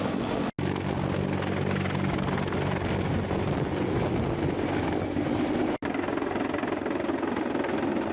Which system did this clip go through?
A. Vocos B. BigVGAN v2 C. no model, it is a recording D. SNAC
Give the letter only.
C